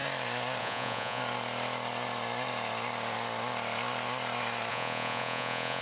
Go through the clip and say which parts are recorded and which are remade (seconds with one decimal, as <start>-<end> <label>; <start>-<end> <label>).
0.0-0.6 recorded; 0.6-1.2 remade; 1.2-4.7 recorded; 4.7-5.8 remade